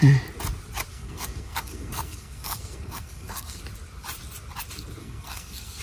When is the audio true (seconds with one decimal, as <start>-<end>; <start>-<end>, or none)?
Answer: 0.0-0.9; 3.6-5.0